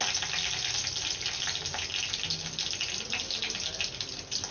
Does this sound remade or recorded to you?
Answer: recorded